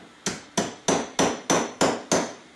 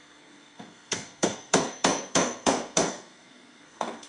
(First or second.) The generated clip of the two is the second